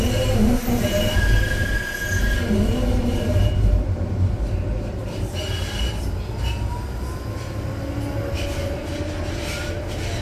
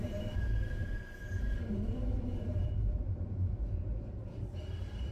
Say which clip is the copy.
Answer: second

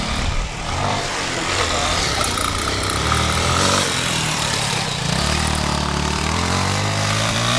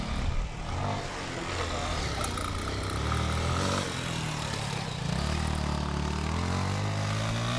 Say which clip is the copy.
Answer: first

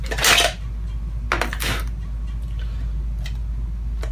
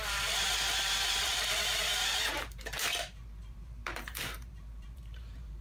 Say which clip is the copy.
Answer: second